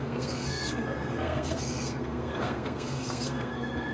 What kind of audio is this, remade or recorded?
remade